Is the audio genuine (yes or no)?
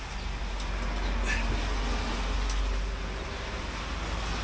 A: yes